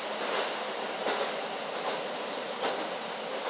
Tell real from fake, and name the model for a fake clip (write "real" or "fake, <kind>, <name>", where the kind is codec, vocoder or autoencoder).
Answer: real